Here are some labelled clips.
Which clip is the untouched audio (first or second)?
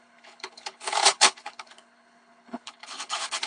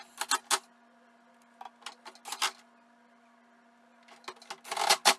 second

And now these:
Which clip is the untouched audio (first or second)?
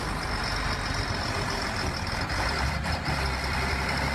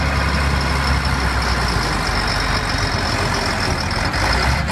second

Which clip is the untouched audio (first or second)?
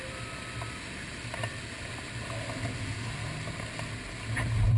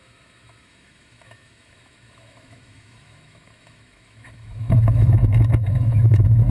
first